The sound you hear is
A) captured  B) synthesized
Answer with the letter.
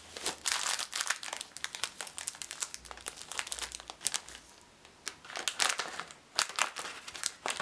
A